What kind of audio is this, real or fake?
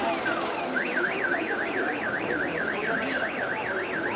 fake